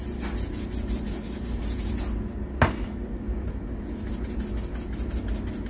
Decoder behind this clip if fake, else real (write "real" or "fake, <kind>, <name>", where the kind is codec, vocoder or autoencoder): real